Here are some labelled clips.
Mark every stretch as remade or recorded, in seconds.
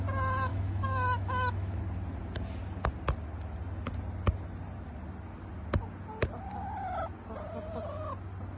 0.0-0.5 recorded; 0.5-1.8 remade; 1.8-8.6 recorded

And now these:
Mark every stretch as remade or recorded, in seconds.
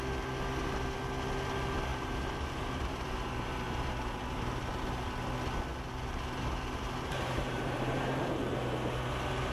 0.0-1.9 recorded; 1.9-4.8 remade; 4.8-5.7 recorded; 5.7-8.3 remade; 8.3-9.5 recorded